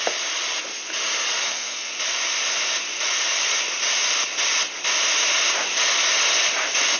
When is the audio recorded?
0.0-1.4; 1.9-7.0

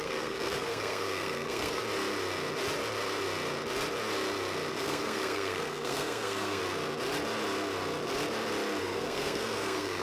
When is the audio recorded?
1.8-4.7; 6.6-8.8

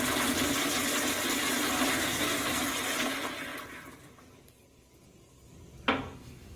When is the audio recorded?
0.0-2.0; 2.7-6.0